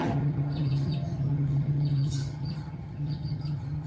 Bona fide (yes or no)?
no